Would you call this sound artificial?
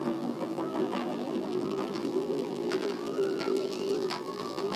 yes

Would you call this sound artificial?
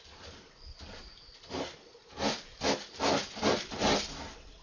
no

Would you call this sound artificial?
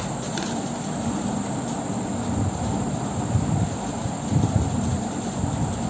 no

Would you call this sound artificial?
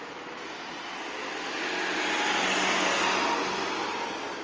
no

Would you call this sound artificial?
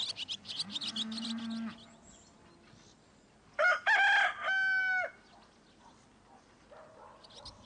no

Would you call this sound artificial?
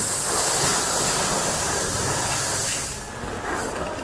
no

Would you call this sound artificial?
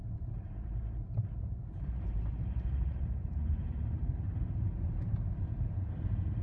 yes